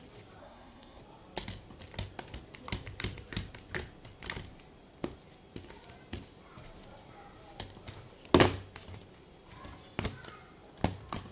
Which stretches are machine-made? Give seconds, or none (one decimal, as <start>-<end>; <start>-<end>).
0.4-1.0